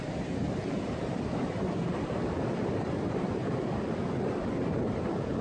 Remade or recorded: remade